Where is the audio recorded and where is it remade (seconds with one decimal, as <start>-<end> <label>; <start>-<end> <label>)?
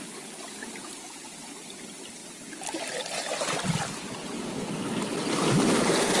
0.0-6.2 recorded